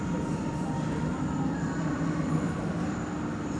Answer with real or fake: fake